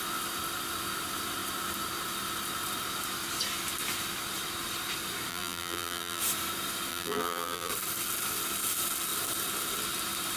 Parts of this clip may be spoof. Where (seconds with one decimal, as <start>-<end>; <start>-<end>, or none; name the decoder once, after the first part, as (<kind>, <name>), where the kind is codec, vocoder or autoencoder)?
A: 5.3-6.2 (vocoder, BigVGAN v2); 6.9-7.7